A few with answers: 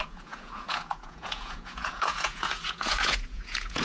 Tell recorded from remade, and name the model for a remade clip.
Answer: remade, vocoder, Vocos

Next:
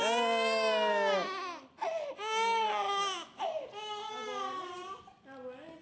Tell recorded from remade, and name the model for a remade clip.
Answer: recorded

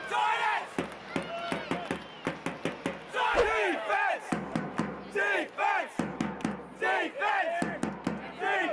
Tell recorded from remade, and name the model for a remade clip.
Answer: recorded